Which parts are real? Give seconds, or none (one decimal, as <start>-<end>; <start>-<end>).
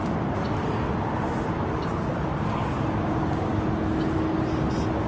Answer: 0.0-5.1